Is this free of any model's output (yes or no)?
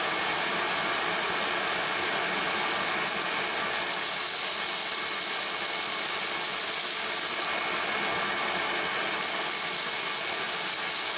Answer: yes